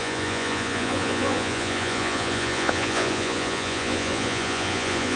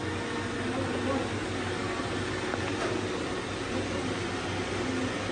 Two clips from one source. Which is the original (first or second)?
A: second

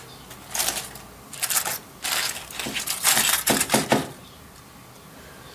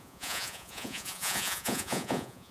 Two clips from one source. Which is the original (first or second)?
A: first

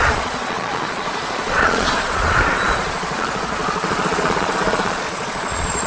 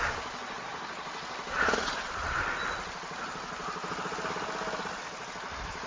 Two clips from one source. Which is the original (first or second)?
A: second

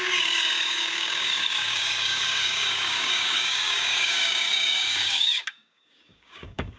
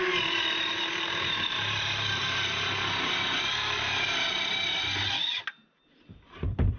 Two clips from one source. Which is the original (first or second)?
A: second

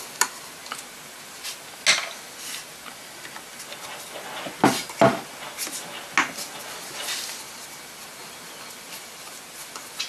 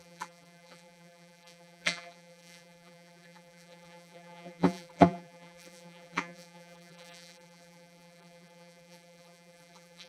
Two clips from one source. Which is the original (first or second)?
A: first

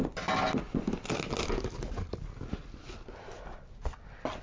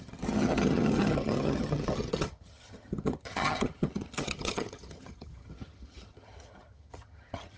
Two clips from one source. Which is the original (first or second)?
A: first